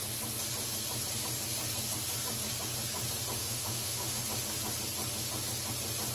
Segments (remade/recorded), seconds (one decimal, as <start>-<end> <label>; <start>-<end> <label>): 0.0-3.4 recorded; 3.4-4.2 remade; 4.2-6.1 recorded